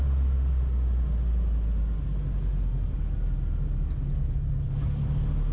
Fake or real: real